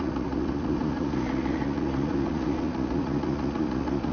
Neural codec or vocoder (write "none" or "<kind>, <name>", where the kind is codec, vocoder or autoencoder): vocoder, Vocos